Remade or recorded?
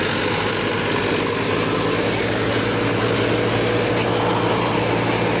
recorded